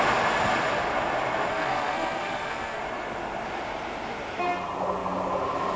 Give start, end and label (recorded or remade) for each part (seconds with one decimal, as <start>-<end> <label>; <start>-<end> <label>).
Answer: 0.0-1.5 recorded; 1.5-2.8 remade; 2.8-5.8 recorded

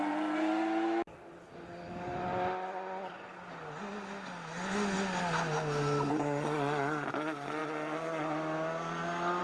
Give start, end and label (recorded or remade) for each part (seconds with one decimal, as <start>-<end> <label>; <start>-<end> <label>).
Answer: 0.0-9.4 recorded

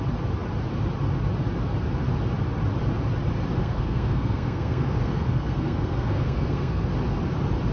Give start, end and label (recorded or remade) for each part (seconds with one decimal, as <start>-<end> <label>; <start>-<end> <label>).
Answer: 0.0-3.6 recorded; 3.6-6.9 remade; 6.9-7.7 recorded

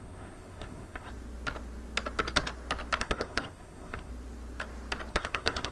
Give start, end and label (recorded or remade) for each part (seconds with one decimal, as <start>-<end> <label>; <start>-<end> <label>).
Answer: 0.0-1.1 remade; 1.1-3.0 recorded; 3.0-4.1 remade; 4.1-5.1 recorded; 5.1-5.7 remade

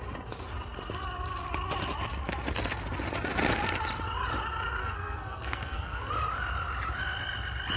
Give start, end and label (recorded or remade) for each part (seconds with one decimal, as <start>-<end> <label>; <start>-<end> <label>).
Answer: 0.0-4.8 recorded; 4.8-6.1 remade; 6.1-7.8 recorded

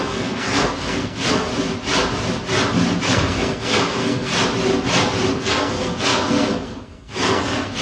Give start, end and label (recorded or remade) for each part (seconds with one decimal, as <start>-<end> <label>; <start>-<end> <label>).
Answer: 0.0-1.5 remade; 1.5-3.0 recorded; 3.0-4.3 remade; 4.3-5.3 recorded; 5.3-7.8 remade

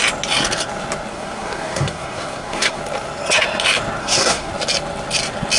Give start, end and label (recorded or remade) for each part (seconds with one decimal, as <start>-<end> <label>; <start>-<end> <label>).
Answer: 0.0-1.1 recorded; 1.1-2.8 remade; 2.8-4.0 recorded; 4.0-4.5 remade; 4.5-5.6 recorded